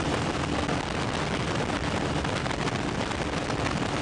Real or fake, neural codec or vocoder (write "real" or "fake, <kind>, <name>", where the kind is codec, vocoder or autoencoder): real